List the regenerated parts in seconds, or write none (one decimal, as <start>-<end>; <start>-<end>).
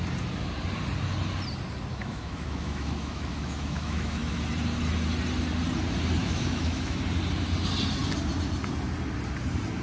1.9-4.3; 6.2-7.0